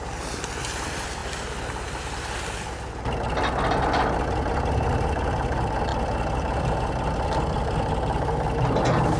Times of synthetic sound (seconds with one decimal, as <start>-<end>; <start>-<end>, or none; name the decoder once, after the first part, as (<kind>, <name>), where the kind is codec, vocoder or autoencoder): none

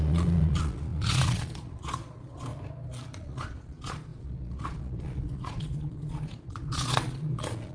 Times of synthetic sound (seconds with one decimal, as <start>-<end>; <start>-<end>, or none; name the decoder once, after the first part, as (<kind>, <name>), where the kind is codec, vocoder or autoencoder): 0.0-2.5 (vocoder, Vocos); 3.1-7.7

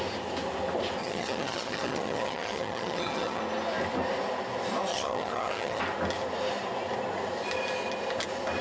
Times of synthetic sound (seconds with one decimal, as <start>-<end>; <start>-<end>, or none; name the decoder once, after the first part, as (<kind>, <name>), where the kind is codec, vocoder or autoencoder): 1.0-3.4 (vocoder, HiFi-GAN); 4.9-5.8

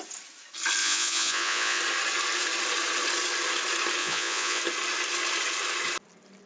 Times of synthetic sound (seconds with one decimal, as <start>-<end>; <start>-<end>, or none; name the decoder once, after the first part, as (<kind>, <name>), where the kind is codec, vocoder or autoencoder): 0.8-1.8 (vocoder, Vocos); 4.0-4.6

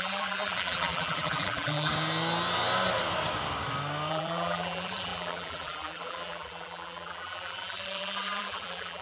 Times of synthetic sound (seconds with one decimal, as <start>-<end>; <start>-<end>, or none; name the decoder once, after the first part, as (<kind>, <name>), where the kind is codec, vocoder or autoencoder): 0.0-1.9 (vocoder, BigVGAN v2); 4.1-9.0

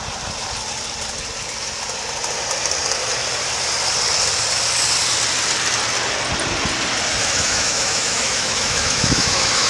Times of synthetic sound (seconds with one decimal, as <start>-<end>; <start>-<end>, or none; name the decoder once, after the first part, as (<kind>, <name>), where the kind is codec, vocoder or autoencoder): 7.2-9.7 (autoencoder, DAC-VAE)

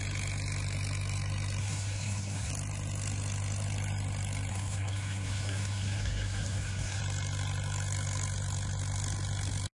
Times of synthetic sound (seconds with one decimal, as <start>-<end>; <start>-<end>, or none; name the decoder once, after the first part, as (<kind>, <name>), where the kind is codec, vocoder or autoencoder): 1.6-2.5 (codec, SNAC); 4.5-7.0

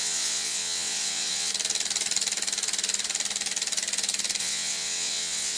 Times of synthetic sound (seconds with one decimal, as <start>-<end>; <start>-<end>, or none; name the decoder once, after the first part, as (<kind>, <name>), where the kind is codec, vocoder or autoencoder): 0.0-1.5 (vocoder, WaveNeXt); 4.4-5.6